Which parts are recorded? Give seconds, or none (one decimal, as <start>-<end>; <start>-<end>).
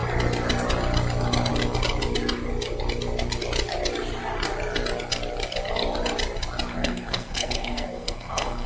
0.0-6.7